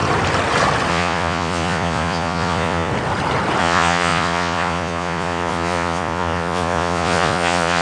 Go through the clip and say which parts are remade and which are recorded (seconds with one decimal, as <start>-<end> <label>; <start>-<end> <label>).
0.0-0.9 recorded; 0.9-2.9 remade; 2.9-3.6 recorded; 3.6-7.8 remade